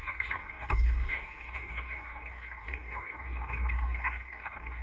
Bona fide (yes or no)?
no